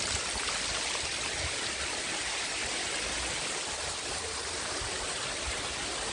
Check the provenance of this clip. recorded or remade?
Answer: recorded